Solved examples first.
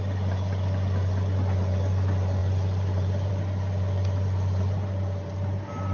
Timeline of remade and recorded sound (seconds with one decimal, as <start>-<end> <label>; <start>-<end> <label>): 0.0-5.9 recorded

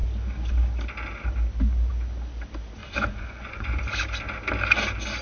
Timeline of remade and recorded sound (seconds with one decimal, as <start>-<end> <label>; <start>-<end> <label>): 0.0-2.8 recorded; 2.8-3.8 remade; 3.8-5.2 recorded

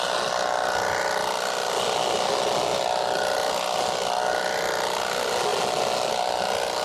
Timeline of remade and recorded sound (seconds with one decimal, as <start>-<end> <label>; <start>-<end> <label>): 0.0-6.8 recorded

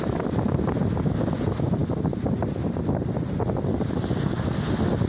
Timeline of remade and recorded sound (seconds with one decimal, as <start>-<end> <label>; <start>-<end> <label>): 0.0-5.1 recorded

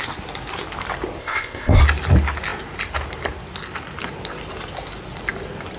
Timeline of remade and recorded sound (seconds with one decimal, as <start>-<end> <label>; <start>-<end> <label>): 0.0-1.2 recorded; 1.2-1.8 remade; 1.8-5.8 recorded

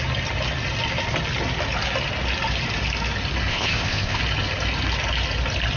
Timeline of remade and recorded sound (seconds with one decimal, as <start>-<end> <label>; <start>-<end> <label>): 0.0-3.5 recorded; 3.5-4.2 remade; 4.2-5.8 recorded